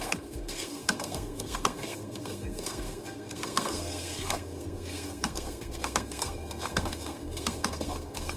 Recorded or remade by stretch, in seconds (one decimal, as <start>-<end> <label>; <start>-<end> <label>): 0.0-8.4 remade